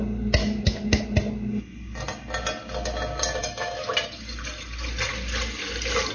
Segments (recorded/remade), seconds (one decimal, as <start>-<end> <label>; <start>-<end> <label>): 0.0-0.4 recorded; 0.4-1.0 remade; 1.0-3.4 recorded; 3.4-3.9 remade; 3.9-6.1 recorded